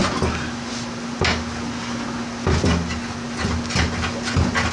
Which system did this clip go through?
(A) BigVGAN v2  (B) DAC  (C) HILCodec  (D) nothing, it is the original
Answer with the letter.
D